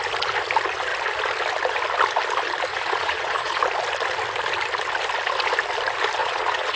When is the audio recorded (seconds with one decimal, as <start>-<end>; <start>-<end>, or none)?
0.0-2.7; 3.6-6.2